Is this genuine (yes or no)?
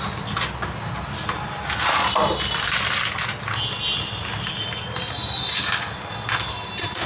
yes